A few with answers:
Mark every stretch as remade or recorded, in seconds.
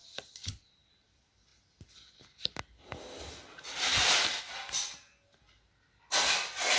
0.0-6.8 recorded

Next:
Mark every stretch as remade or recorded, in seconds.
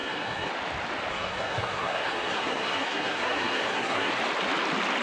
0.0-0.5 remade; 0.5-1.1 recorded; 1.1-4.1 remade; 4.1-5.0 recorded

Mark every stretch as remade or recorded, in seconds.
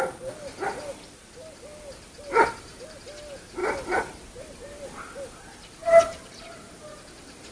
0.0-3.6 recorded; 3.6-4.8 remade; 4.8-5.8 recorded; 5.8-6.8 remade; 6.8-7.5 recorded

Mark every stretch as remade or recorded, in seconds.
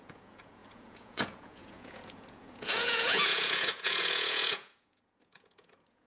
0.0-6.1 remade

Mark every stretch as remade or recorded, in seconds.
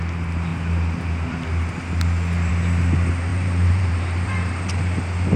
0.0-3.3 recorded; 3.3-4.7 remade; 4.7-5.4 recorded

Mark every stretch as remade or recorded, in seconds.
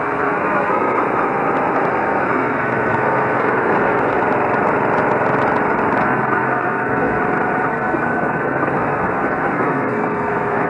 0.0-1.0 remade; 1.0-1.9 recorded; 1.9-4.2 remade; 4.2-6.0 recorded; 6.0-7.2 remade; 7.2-7.7 recorded; 7.7-10.7 remade